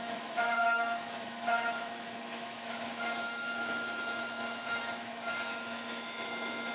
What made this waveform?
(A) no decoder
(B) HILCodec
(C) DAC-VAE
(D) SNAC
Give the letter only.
C